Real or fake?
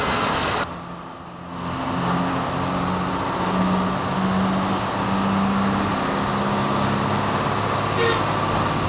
real